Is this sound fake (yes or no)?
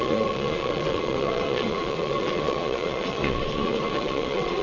yes